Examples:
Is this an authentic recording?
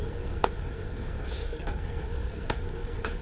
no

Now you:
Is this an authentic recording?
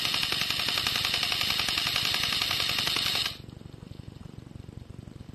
yes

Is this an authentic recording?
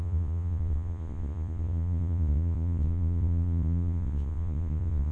no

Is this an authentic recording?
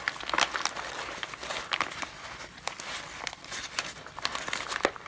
yes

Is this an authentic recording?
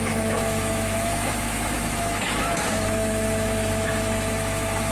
no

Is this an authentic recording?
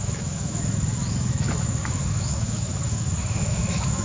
no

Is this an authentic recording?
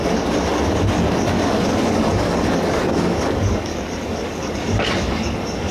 no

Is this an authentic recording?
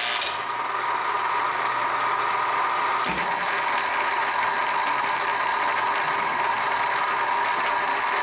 yes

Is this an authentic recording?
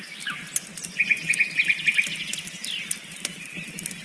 yes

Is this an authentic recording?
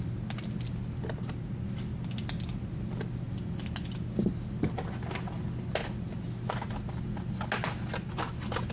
yes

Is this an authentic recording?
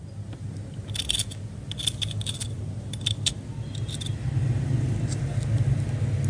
yes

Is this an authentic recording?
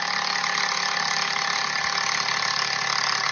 yes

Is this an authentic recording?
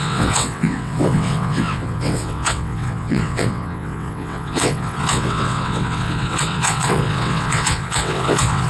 no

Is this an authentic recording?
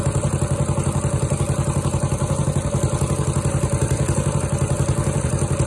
yes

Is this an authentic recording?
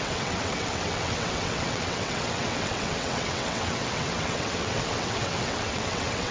no